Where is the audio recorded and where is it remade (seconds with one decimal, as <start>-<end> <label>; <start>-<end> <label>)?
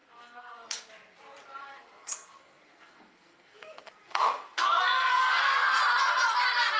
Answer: 0.0-0.9 remade; 0.9-1.7 recorded; 1.7-5.8 remade; 5.8-6.8 recorded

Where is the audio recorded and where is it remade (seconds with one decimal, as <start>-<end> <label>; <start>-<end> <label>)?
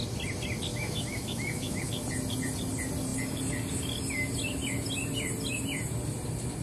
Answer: 0.0-0.7 recorded; 0.7-1.9 remade; 1.9-6.6 recorded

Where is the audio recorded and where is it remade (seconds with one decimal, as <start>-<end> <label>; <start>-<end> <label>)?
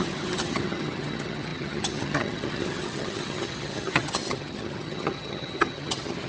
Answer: 0.0-6.3 remade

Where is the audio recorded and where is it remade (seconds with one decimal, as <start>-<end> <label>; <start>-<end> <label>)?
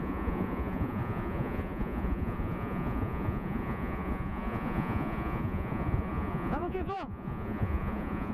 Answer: 0.0-8.3 remade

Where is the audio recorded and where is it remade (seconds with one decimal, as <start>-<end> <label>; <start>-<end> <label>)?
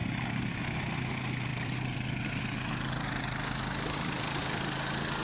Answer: 0.0-0.6 remade; 0.6-1.5 recorded; 1.5-4.6 remade; 4.6-5.2 recorded